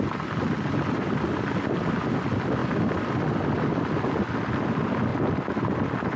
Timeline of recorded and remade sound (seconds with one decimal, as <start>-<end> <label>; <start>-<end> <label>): 0.0-6.2 recorded